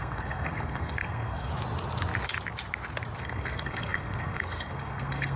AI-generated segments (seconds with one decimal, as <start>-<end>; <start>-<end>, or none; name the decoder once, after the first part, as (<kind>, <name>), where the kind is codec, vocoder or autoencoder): 0.0-1.5 (codec, SNAC); 3.2-5.4